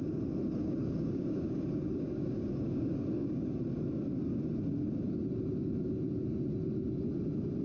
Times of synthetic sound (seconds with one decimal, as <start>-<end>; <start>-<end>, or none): 0.6-3.6